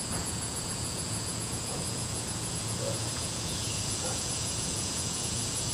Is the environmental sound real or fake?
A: fake